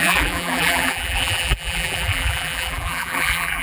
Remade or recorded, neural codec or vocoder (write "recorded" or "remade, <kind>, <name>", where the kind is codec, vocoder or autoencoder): remade, vocoder, BigVGAN v2